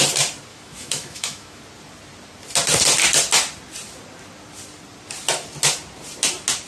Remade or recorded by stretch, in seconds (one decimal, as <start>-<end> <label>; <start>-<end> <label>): 0.0-0.5 recorded; 0.5-1.6 remade; 1.6-6.7 recorded